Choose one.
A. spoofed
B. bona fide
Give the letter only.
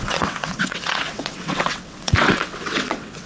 A